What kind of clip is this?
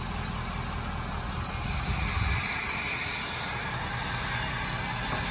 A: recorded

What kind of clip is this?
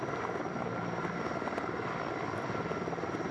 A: recorded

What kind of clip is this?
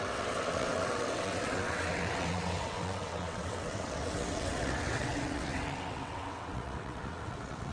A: remade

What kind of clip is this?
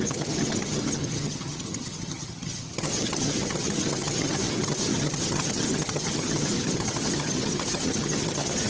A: remade